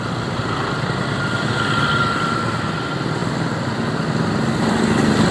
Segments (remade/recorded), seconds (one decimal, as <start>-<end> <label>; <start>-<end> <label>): 0.0-5.3 recorded